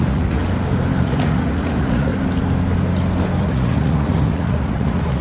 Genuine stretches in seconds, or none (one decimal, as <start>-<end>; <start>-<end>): 0.4-1.0; 2.1-3.4